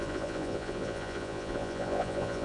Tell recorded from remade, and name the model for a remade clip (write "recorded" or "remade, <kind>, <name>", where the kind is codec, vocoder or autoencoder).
remade, vocoder, Vocos